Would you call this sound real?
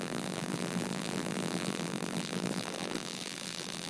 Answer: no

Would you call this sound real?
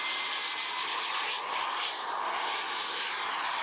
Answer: yes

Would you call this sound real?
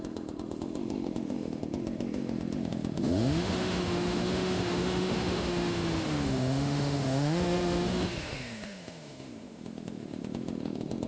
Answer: no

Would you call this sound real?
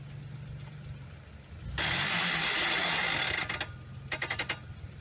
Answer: yes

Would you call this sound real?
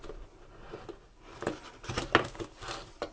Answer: yes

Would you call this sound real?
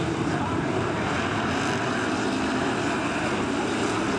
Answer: no